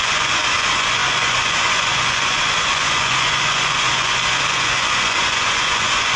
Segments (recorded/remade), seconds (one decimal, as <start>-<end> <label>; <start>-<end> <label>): 0.0-6.2 remade

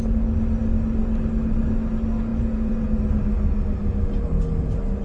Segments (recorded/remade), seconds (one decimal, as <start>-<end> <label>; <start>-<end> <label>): 0.0-2.3 recorded; 2.3-3.0 remade; 3.0-5.0 recorded